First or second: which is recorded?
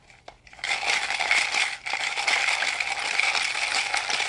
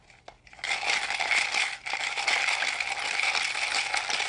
second